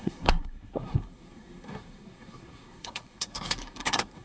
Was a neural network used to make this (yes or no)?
yes